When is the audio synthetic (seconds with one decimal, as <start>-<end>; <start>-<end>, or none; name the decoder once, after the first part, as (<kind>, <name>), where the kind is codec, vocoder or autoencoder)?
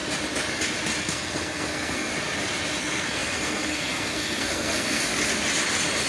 1.0-2.1 (codec, SNAC); 2.8-5.1